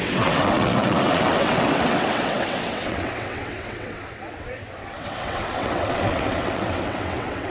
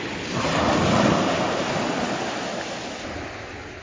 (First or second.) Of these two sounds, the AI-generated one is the first